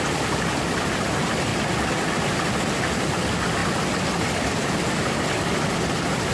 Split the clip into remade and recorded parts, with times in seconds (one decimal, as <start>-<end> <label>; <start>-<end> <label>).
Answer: 0.0-6.3 recorded